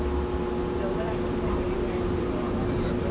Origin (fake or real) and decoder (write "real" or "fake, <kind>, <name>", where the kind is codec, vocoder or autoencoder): real